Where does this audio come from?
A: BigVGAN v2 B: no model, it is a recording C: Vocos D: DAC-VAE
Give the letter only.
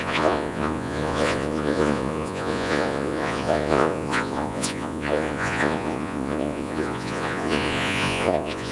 C